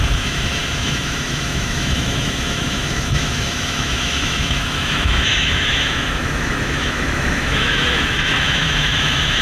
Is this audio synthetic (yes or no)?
yes